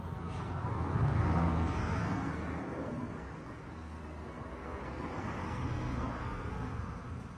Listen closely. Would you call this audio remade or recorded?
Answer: remade